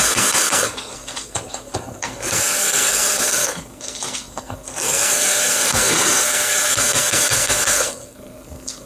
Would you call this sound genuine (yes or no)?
no